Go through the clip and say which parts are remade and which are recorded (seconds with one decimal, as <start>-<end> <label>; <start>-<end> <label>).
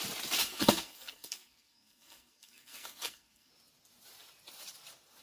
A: 0.0-0.4 recorded; 0.4-3.5 remade; 3.5-5.2 recorded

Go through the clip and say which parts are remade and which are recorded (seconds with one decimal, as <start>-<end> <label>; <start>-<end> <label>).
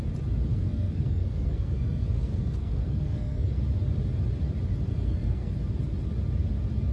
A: 0.0-0.5 recorded; 0.5-3.6 remade; 3.6-4.9 recorded; 4.9-5.5 remade; 5.5-6.9 recorded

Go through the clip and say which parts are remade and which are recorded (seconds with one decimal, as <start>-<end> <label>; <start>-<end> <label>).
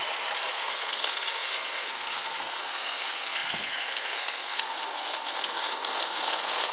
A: 0.0-0.5 recorded; 0.5-6.7 remade